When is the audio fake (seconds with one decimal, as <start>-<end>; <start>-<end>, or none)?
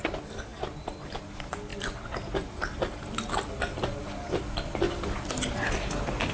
none